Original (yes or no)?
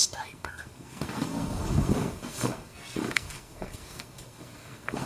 no